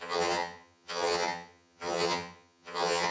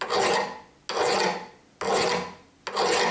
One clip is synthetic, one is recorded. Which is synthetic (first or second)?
first